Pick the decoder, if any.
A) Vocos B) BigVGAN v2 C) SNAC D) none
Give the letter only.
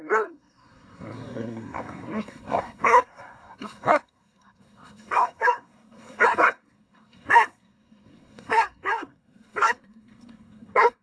C